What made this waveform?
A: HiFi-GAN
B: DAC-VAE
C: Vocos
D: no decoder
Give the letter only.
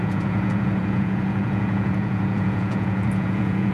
C